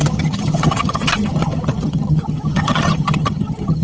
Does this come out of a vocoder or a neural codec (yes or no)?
yes